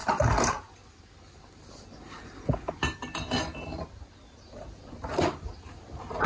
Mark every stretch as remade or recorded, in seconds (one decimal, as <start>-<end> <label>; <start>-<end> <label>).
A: 0.0-6.3 recorded